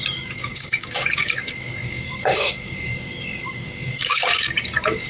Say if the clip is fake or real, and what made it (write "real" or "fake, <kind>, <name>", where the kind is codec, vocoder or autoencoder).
fake, codec, DAC